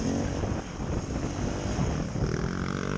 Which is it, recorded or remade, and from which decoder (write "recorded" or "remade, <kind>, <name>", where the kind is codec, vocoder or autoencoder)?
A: recorded